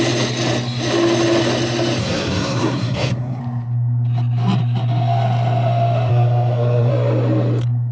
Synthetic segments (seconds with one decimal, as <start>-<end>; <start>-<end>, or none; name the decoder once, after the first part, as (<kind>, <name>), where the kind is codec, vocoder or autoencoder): 2.0-3.4 (codec, SNAC); 6.1-6.9

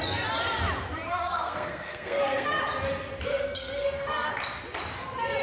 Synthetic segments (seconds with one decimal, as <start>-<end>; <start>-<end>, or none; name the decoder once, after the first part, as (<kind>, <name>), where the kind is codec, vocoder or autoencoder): 1.1-2.6 (codec, SNAC); 3.3-4.3

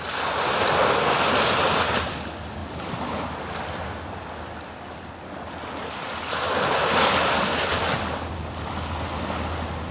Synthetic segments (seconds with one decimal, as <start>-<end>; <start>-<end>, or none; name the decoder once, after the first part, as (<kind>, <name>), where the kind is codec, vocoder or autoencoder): none

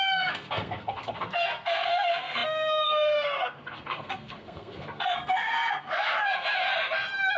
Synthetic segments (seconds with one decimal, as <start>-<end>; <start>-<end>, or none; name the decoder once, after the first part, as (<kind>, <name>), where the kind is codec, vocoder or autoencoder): 0.0-6.7 (codec, SNAC)

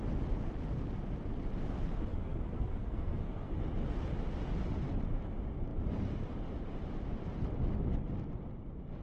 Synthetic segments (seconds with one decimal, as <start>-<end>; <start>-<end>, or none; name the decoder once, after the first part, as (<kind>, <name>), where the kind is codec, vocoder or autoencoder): 2.1-3.5 (codec, SNAC)

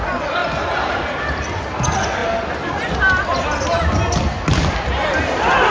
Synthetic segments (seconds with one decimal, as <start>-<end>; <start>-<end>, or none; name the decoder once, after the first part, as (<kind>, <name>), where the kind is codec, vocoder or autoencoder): none